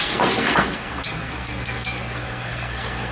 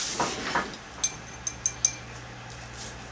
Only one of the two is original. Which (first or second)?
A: second